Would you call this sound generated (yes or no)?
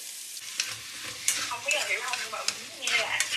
no